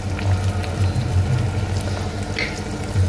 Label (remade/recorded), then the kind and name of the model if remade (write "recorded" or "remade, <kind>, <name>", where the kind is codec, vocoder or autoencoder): recorded